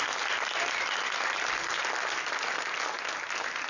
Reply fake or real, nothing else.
real